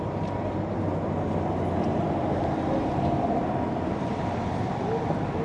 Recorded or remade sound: recorded